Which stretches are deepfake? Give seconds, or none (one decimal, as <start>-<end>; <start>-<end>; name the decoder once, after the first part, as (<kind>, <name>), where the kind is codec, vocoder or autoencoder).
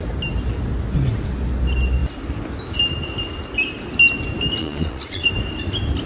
4.6-5.3 (vocoder, Vocos)